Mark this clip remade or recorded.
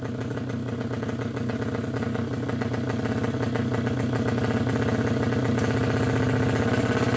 recorded